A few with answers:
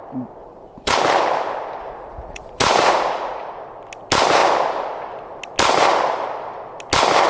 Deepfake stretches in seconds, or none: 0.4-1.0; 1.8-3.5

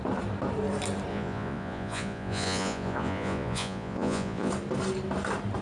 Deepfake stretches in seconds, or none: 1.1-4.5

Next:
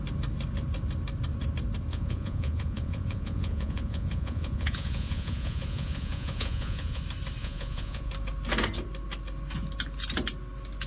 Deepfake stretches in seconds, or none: 1.9-7.0; 7.4-8.1